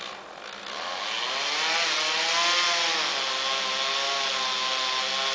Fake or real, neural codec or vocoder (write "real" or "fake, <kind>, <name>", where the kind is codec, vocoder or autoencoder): real